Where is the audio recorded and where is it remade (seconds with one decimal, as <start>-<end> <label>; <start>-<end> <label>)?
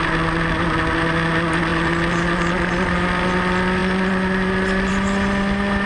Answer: 0.0-5.9 recorded